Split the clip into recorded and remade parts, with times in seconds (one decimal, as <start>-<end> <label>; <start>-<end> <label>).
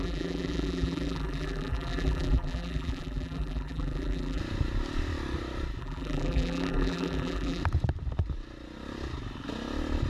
0.0-4.4 remade; 4.4-5.8 recorded; 5.8-7.6 remade; 7.6-10.1 recorded